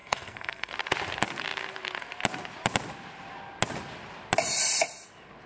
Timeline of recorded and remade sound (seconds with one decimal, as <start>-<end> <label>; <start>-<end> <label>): 0.0-0.7 remade; 0.7-5.5 recorded